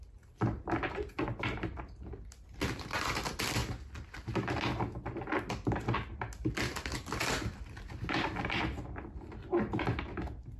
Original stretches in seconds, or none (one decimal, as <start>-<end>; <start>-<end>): 0.0-10.6

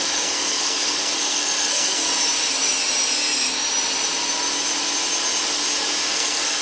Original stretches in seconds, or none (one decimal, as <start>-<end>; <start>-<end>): 2.1-6.1

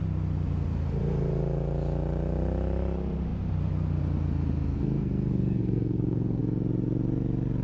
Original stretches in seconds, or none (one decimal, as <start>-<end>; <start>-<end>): 0.0-4.7; 6.4-7.6

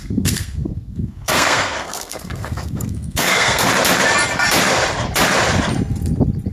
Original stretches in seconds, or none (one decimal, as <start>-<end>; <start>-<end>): 3.7-6.5

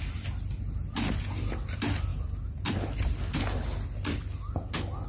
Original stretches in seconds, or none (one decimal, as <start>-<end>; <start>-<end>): 0.0-5.1

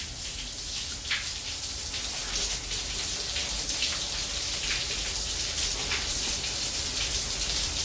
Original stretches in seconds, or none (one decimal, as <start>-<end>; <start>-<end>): 0.0-7.8

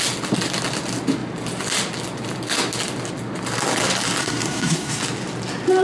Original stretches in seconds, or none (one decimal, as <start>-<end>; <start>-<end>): 0.0-4.2; 5.0-5.8